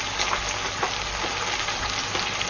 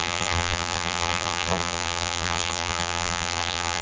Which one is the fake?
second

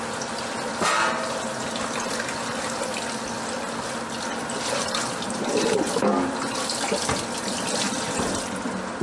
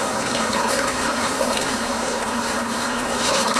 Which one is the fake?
second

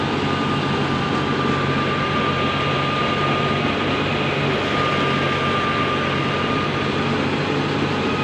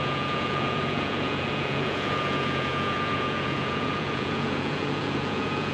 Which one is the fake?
second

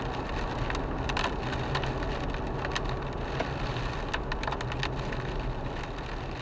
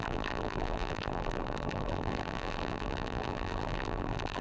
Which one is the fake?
second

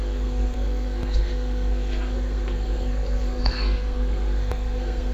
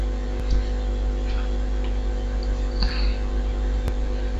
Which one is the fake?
first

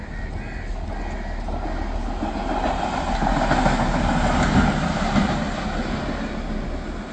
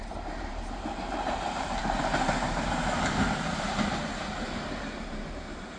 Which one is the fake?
second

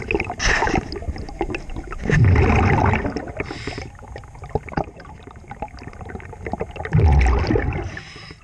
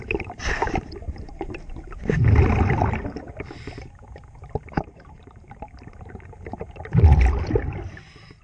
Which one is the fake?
second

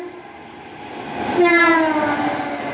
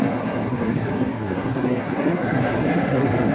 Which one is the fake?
second